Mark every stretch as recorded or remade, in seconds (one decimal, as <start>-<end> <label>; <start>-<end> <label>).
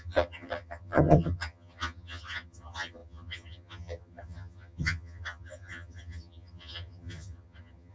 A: 0.0-7.9 remade